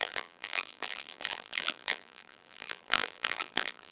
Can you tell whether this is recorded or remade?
remade